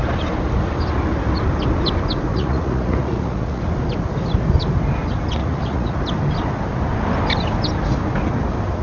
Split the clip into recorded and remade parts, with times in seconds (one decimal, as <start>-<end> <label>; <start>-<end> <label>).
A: 0.0-2.3 recorded; 2.3-3.6 remade; 3.6-5.4 recorded; 5.4-6.0 remade; 6.0-8.8 recorded